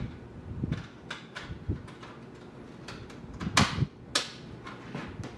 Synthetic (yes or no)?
no